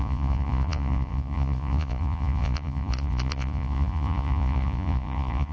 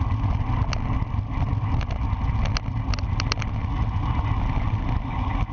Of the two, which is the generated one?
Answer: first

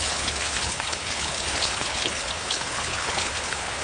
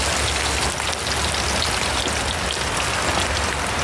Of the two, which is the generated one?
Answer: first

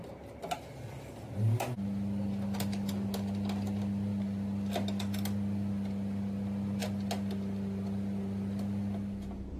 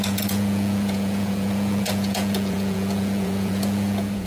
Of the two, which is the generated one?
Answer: second